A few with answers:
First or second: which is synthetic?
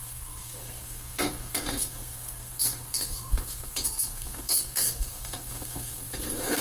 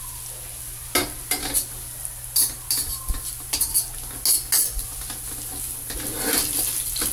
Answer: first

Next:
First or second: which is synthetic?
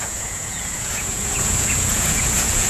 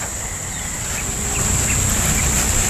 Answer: first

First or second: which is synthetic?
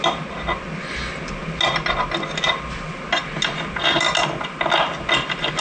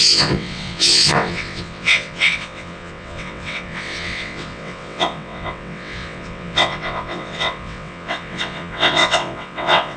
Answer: second